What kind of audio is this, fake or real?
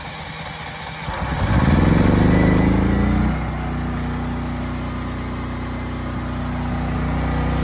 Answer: real